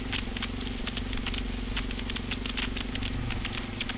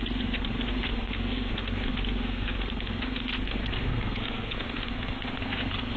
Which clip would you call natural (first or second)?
first